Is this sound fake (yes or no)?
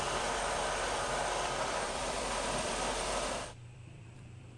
yes